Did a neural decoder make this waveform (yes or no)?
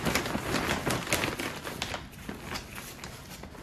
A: no